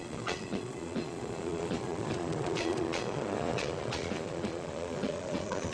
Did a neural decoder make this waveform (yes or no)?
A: yes